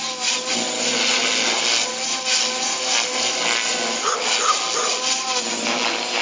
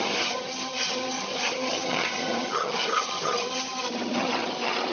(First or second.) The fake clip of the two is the second